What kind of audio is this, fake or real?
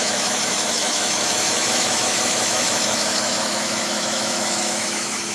fake